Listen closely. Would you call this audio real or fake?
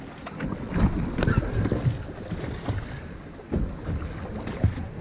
real